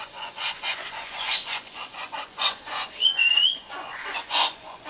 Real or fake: fake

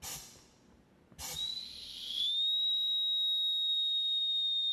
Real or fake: real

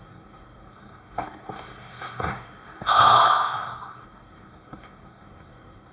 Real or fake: fake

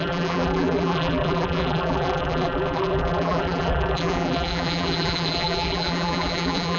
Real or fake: fake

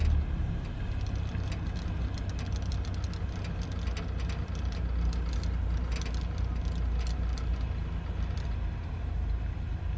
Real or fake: real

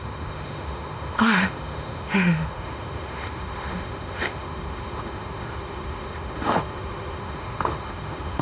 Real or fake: fake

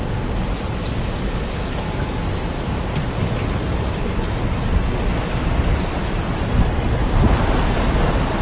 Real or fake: real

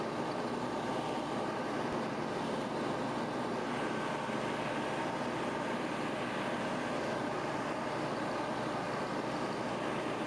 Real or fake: real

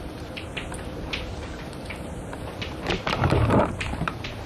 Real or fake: fake